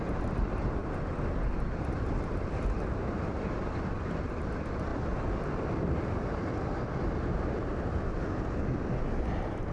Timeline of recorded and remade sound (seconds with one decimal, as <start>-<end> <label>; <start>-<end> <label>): 0.0-9.7 recorded